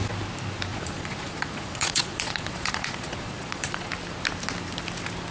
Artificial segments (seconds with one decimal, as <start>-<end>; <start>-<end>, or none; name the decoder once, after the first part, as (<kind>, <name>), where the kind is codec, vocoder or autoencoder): 0.7-3.9 (vocoder, Vocos)